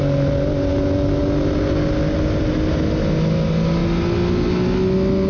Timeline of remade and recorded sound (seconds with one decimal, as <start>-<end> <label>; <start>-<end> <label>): 0.0-5.3 recorded